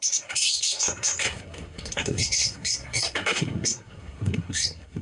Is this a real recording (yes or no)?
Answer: no